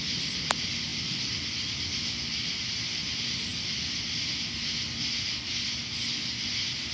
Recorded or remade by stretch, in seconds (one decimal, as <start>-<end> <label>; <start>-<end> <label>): 0.0-0.9 recorded; 0.9-2.6 remade; 2.6-3.5 recorded; 3.5-4.3 remade; 4.3-6.9 recorded